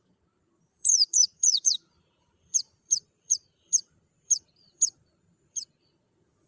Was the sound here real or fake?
fake